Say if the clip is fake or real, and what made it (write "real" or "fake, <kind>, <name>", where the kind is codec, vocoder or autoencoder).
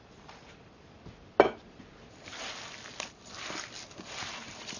fake, vocoder, BigVGAN v2